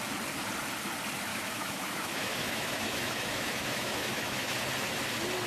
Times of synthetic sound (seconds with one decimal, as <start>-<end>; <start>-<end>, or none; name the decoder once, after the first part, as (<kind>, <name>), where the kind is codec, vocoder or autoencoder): 1.3-4.6 (autoencoder, DAC-VAE)